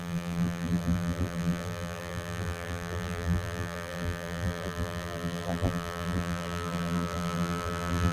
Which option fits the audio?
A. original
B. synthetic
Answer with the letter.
B